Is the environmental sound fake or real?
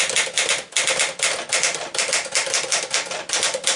real